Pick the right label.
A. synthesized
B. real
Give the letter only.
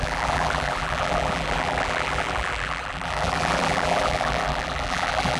A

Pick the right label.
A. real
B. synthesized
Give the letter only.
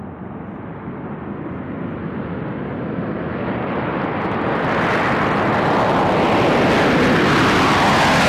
A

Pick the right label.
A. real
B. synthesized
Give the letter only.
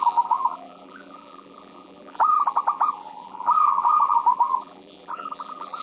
B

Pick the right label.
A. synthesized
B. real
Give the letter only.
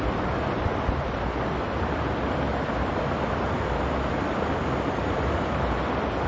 B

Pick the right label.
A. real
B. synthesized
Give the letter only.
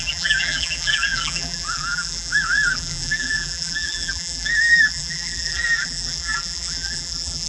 B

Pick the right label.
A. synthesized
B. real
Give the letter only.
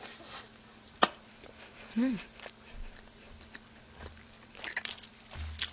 A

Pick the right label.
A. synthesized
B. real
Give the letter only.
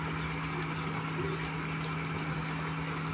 B